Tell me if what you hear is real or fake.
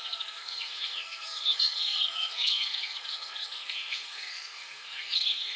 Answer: fake